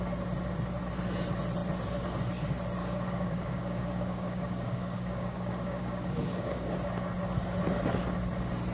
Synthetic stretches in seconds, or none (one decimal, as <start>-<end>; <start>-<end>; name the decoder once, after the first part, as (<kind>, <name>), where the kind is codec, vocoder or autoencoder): 2.8-6.7 (codec, DAC)